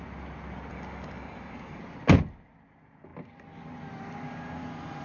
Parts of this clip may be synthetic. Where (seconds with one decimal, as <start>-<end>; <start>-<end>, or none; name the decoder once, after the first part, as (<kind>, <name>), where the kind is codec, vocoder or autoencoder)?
0.7-1.8 (codec, DAC)